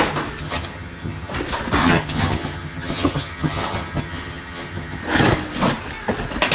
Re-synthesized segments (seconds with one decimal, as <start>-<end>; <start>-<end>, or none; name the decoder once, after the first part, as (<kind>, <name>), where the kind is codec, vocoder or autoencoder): 0.4-1.3 (vocoder, HiFi-GAN); 1.8-5.0